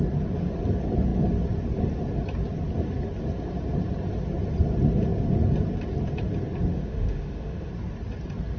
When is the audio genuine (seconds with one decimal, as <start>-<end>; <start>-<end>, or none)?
0.0-6.7; 7.7-8.6